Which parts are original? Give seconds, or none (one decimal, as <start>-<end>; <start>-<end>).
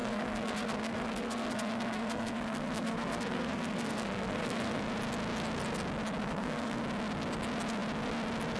4.8-6.2; 6.8-8.6